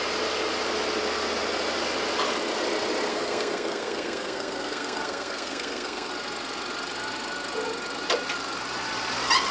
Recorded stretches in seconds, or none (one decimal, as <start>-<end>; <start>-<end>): 0.0-3.1; 6.1-9.5